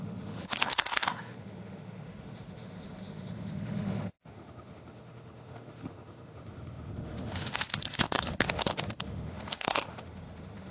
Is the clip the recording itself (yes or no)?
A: no